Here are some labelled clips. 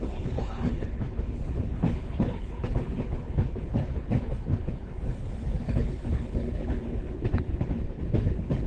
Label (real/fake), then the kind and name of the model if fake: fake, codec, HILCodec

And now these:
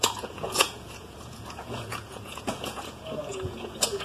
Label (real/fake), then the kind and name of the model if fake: fake, vocoder, Vocos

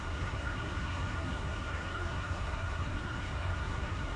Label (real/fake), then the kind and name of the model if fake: fake, codec, SNAC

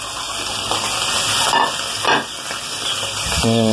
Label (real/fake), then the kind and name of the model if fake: real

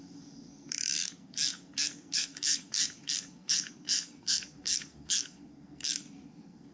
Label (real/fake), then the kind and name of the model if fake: fake, codec, SNAC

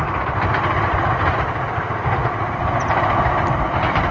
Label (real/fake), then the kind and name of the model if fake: real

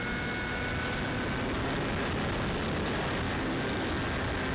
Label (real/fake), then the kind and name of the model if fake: real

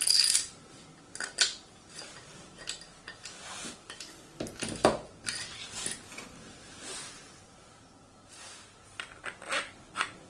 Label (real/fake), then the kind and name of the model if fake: real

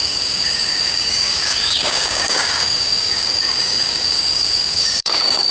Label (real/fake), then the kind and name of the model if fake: fake, codec, DAC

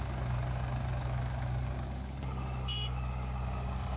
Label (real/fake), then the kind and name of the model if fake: fake, codec, DAC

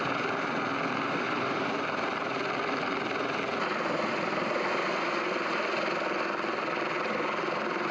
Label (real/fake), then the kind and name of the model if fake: real